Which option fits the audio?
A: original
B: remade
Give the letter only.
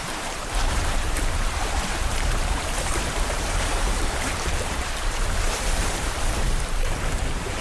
B